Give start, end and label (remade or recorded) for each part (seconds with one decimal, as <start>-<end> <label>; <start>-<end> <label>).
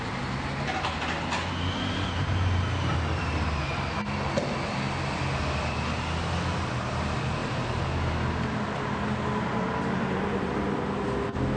0.0-11.6 recorded